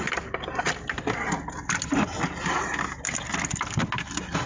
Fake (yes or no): no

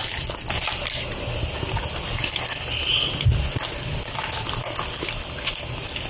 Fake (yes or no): no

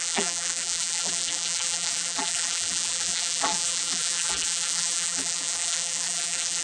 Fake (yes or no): yes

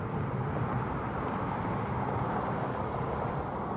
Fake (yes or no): no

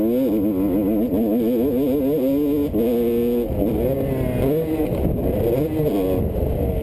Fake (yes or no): no